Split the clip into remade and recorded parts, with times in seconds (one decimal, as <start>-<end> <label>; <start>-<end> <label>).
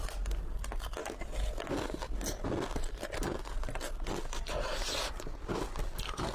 0.0-6.3 recorded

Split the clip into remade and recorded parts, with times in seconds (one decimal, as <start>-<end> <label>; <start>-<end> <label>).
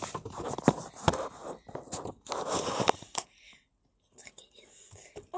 0.0-5.4 recorded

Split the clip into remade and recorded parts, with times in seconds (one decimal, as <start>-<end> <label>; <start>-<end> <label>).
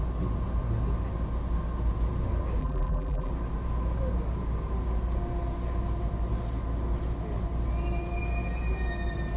0.0-2.6 recorded; 2.6-3.3 remade; 3.3-9.4 recorded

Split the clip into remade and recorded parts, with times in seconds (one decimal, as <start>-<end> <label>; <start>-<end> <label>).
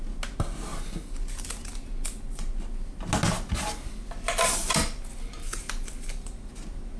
0.0-7.0 recorded